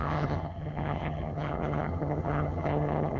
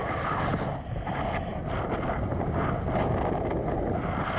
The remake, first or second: first